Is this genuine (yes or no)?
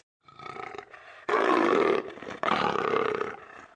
no